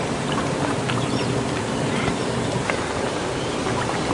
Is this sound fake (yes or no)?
yes